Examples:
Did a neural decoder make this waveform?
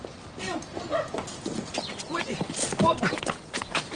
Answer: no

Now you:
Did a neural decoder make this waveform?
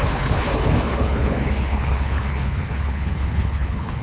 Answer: yes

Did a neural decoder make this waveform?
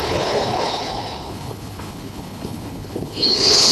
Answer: yes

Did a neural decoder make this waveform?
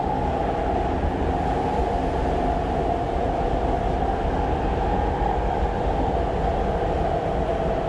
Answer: no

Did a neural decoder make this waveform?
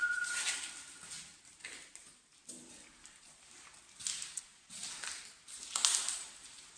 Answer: no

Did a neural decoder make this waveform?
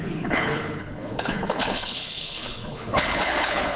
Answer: yes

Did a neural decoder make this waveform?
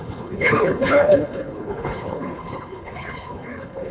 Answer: yes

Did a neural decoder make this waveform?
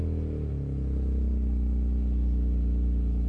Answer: no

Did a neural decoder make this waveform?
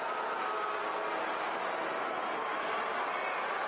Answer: no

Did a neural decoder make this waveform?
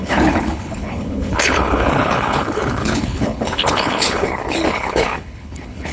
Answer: yes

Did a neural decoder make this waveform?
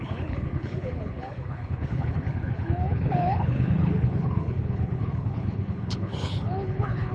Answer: yes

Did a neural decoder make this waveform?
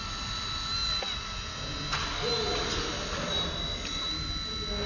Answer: no